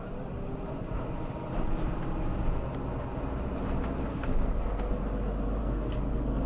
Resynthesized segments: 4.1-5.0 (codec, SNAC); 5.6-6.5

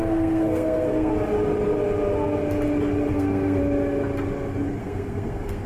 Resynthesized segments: 0.0-1.1 (codec, SNAC); 3.1-3.6; 4.8-5.7